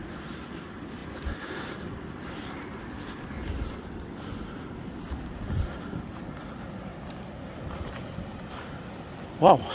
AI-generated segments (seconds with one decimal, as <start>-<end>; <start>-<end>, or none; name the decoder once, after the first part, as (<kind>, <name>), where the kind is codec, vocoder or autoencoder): 0.0-1.0 (vocoder, BigVGAN v2); 5.5-6.9